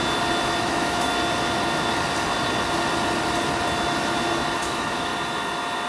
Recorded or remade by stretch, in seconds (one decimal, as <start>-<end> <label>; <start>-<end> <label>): 0.0-0.6 recorded; 0.6-1.1 remade; 1.1-4.6 recorded; 4.6-5.1 remade; 5.1-5.9 recorded